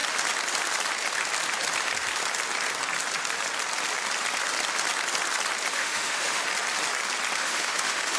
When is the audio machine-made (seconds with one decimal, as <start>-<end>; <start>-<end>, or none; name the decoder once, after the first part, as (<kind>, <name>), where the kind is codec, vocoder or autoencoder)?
5.7-6.4 (autoencoder, DAC-VAE); 7.4-8.2